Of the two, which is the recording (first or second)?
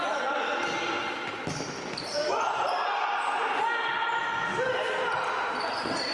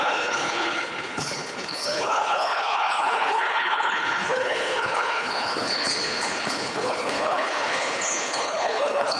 first